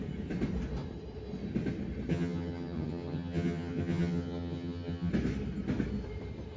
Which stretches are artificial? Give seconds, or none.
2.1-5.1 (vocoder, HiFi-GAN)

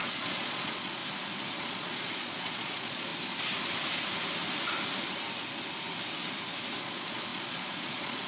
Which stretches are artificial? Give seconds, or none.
0.0-1.0 (vocoder, Vocos); 1.7-3.1; 6.8-8.3

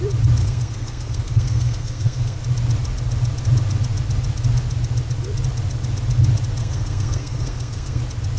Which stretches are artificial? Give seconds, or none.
0.4-2.4 (codec, SNAC); 6.6-8.0

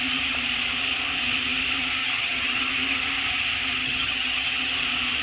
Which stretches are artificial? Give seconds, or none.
2.0-2.7 (vocoder, HiFi-GAN); 3.8-4.7

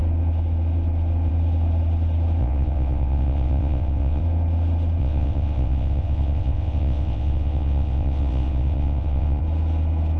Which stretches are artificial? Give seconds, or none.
2.4-4.2 (vocoder, WaveNeXt); 5.0-9.4

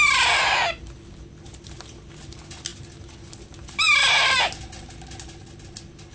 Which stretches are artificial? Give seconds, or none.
none

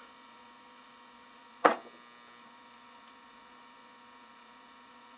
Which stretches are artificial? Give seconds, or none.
0.0-1.8 (vocoder, Vocos); 2.4-5.2

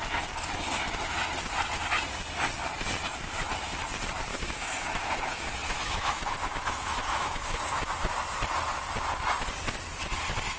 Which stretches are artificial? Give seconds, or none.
4.3-8.1 (autoencoder, DAC-VAE)